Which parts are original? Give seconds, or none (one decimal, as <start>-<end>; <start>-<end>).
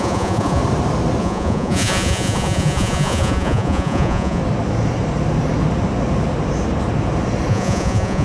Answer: 0.6-1.2; 4.4-7.5